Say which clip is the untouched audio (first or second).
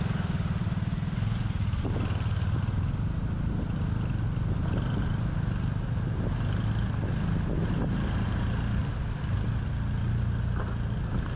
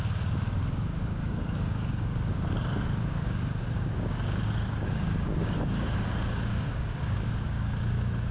first